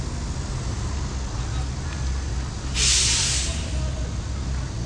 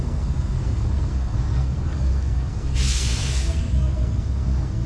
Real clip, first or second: first